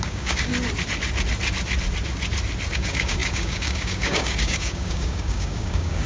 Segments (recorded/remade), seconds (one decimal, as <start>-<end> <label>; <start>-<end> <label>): 0.0-0.5 remade; 0.5-2.7 recorded; 2.7-6.1 remade